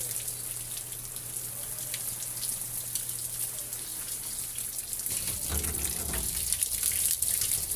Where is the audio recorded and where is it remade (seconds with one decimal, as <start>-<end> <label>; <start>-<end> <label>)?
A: 0.0-7.8 recorded